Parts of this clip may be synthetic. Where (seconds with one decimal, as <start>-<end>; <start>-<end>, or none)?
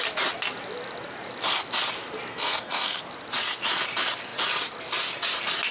2.3-3.0